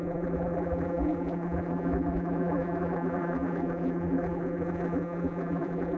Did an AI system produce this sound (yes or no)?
yes